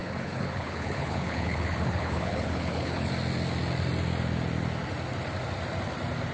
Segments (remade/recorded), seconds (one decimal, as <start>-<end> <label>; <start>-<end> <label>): 0.0-3.1 remade; 3.1-6.3 recorded